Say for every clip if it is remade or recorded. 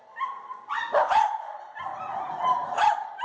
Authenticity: recorded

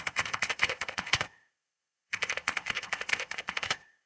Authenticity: remade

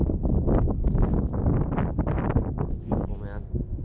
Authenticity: recorded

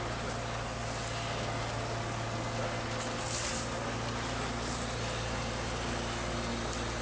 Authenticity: recorded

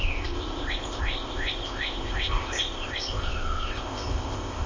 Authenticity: remade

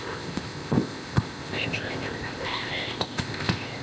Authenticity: remade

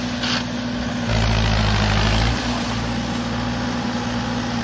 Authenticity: recorded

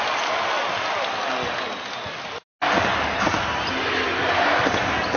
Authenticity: recorded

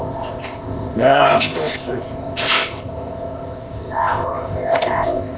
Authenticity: remade